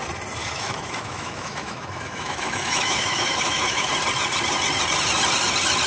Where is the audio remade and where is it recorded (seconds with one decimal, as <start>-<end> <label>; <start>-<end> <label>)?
0.0-0.4 recorded; 0.4-3.9 remade; 3.9-5.9 recorded